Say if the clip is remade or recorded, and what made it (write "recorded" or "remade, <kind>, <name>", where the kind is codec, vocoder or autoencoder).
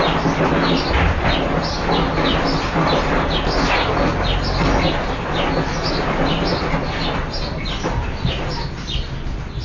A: recorded